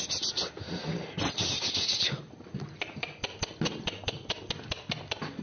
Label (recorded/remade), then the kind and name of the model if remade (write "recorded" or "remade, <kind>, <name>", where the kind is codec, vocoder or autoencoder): recorded